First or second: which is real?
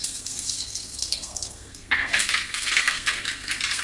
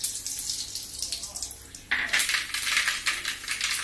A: second